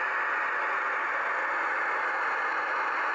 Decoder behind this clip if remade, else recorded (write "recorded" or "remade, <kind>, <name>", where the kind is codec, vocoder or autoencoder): recorded